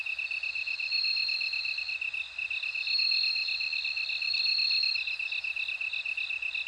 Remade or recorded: recorded